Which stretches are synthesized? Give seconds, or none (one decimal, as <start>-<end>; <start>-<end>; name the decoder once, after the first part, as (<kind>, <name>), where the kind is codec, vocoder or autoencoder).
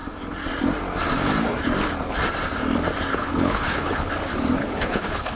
3.1-4.1 (codec, HILCodec); 4.6-5.4